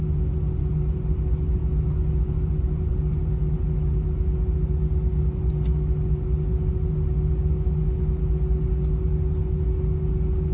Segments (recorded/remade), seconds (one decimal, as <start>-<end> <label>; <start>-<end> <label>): 0.0-10.5 recorded